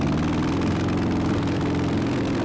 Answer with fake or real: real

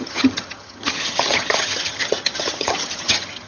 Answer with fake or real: fake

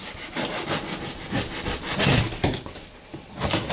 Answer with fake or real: real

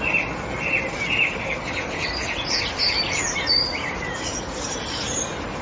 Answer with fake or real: fake